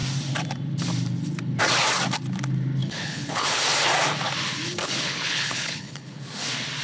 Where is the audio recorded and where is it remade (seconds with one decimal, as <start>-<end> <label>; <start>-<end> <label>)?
0.0-2.8 recorded; 2.8-3.6 remade; 3.6-4.8 recorded; 4.8-6.2 remade; 6.2-6.8 recorded